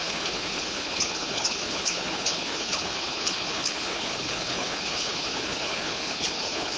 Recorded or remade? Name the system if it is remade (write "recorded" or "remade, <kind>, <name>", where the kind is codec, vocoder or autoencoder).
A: remade, codec, HILCodec